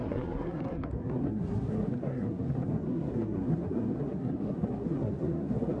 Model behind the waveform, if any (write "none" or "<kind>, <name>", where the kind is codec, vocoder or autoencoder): codec, SNAC